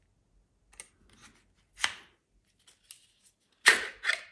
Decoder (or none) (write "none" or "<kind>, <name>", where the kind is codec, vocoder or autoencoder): none